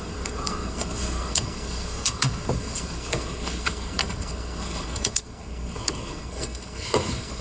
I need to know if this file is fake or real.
fake